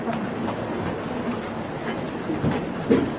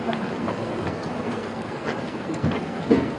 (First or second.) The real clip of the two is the first